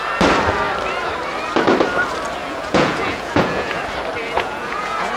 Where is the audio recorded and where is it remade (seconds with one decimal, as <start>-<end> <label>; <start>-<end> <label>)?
0.0-2.4 recorded; 2.4-3.8 remade; 3.8-4.2 recorded; 4.2-5.2 remade